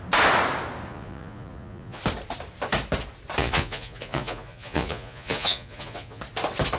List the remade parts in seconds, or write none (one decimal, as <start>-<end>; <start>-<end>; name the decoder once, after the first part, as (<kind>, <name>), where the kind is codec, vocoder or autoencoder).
0.9-2.0 (vocoder, Vocos); 3.4-6.2